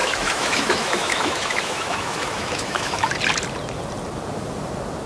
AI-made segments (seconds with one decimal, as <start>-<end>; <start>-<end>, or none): 0.0-3.1